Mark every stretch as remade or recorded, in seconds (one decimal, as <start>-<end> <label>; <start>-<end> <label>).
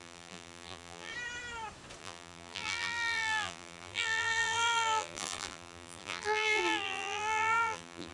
0.0-1.1 remade; 1.1-2.0 recorded; 2.0-8.1 remade